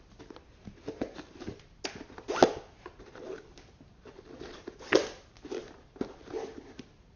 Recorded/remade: recorded